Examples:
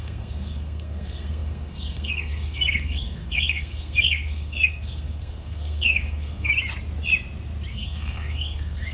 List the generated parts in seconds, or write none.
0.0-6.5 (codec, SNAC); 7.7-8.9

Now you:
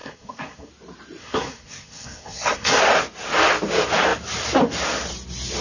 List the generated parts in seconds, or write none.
0.0-0.7 (codec, SNAC); 1.2-2.8